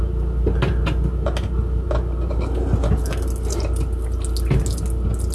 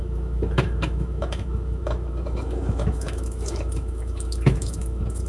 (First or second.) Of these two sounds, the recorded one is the first